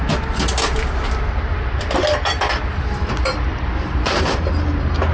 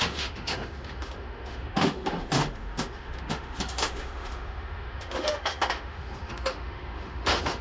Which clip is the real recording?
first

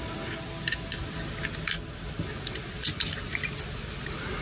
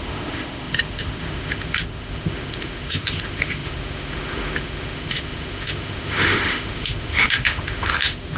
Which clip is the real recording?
first